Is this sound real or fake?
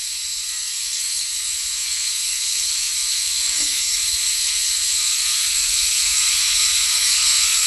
fake